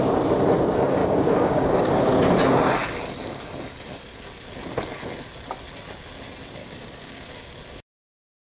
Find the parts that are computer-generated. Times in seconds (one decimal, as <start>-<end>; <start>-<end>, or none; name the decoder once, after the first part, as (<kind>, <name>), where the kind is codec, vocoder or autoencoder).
1.0-1.9 (codec, DAC); 6.6-7.3